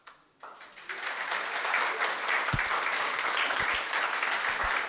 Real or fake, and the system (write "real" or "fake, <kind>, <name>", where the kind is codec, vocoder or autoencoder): real